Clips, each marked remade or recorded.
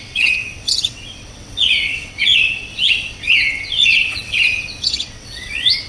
remade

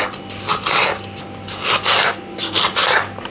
recorded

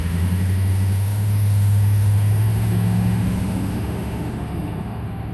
remade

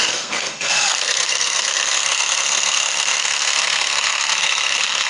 remade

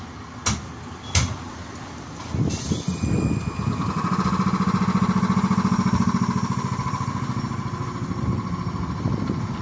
recorded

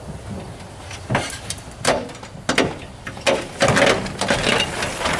recorded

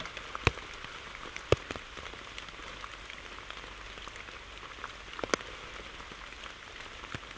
recorded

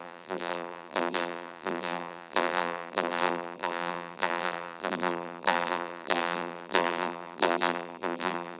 remade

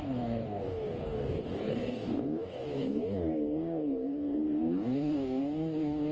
remade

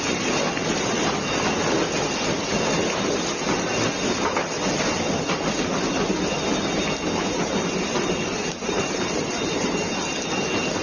recorded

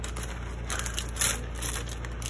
recorded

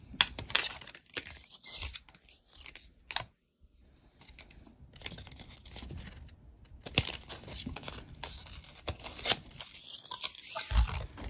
recorded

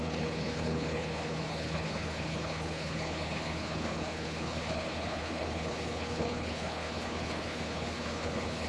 remade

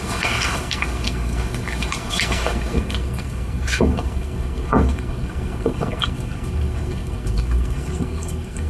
remade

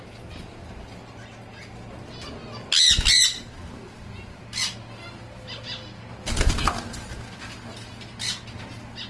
recorded